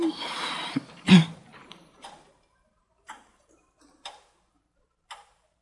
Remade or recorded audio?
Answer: remade